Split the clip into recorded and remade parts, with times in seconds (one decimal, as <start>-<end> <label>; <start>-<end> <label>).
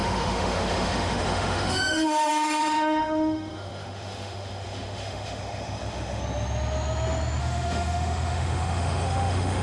0.0-6.2 remade; 6.2-7.4 recorded; 7.4-9.6 remade